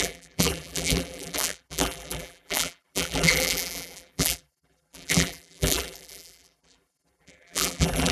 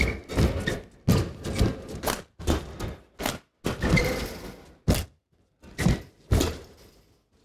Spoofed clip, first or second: first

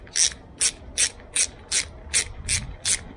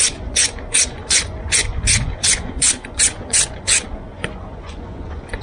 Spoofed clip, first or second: second